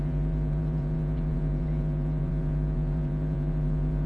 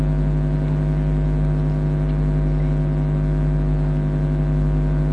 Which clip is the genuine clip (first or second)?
second